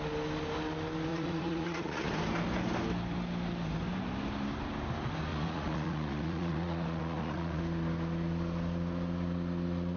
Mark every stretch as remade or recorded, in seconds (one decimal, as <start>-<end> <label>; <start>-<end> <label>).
0.0-1.1 recorded; 1.1-2.1 remade; 2.1-5.3 recorded; 5.3-7.6 remade; 7.6-10.0 recorded